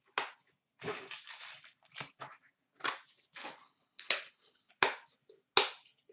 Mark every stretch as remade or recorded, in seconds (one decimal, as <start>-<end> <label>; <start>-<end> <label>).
0.0-3.4 recorded; 3.4-4.7 remade; 4.7-6.1 recorded